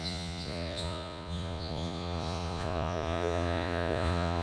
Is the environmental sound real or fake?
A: fake